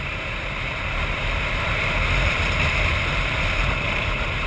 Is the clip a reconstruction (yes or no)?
yes